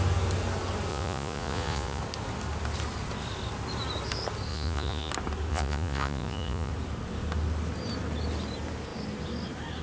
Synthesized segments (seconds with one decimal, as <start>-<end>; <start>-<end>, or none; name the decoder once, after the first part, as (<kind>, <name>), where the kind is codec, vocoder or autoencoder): 0.9-2.0 (vocoder, Vocos); 4.5-5.1; 5.5-6.7